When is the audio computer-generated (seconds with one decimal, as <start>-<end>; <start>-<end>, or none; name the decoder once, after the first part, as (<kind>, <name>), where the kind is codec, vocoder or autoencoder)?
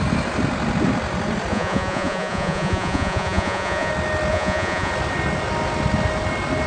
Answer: 1.5-3.9 (vocoder, Vocos); 4.3-4.9